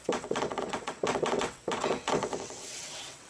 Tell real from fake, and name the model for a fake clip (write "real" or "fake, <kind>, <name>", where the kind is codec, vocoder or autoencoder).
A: fake, vocoder, WaveNeXt